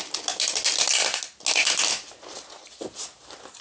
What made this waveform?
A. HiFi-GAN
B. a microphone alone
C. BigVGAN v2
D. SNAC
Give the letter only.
B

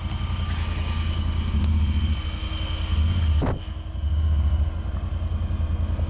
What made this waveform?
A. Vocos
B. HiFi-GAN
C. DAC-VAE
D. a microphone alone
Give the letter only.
D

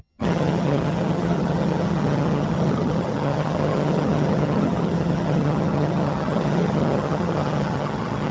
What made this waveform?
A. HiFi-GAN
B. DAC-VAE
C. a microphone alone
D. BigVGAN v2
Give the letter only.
A